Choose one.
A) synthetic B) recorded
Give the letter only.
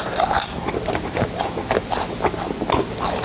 B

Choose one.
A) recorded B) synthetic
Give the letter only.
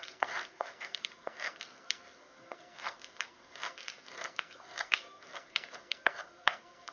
B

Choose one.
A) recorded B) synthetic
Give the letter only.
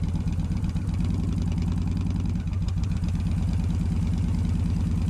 A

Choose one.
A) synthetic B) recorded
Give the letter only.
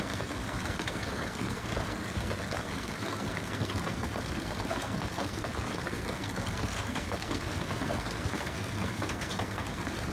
A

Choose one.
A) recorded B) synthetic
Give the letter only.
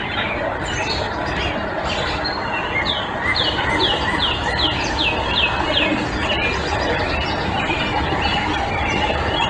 A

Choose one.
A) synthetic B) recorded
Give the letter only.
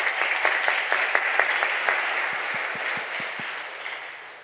B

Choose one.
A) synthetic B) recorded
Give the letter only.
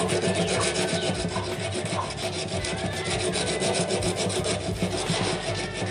B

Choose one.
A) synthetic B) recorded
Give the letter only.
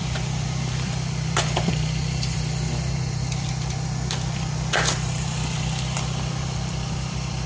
A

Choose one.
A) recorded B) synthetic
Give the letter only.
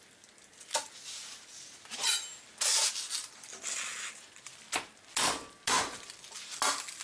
A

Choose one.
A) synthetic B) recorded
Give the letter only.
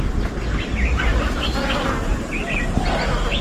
B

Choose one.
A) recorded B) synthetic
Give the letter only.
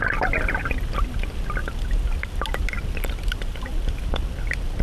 A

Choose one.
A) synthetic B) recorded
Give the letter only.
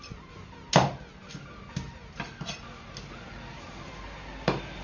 B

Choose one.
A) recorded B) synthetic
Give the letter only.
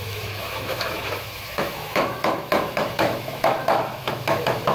B